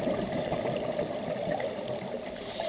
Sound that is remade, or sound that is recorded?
recorded